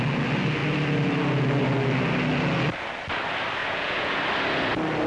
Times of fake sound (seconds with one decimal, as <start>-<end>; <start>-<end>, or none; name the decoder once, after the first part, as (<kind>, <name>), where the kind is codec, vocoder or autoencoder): 3.6-4.2 (vocoder, Vocos)